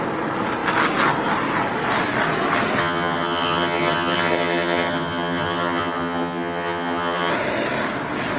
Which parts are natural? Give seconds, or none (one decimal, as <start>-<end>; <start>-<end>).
0.0-2.8; 7.3-8.4